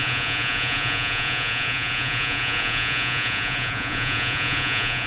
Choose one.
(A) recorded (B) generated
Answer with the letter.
B